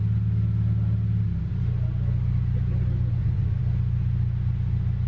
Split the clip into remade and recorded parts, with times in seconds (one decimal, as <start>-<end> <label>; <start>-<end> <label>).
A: 0.0-3.1 recorded; 3.1-3.6 remade; 3.6-5.1 recorded